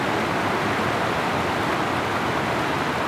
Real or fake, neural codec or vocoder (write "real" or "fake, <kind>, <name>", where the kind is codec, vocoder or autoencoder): real